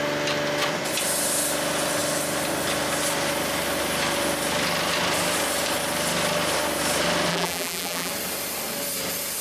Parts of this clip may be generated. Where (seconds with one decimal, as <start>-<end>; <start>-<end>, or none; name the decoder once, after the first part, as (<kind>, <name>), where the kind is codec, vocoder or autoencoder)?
7.3-8.1 (vocoder, BigVGAN v2)